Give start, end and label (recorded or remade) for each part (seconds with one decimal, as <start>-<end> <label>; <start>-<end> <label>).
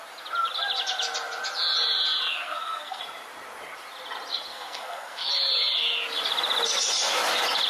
0.0-2.3 recorded; 2.3-3.0 remade; 3.0-4.5 recorded; 4.5-5.3 remade; 5.3-7.7 recorded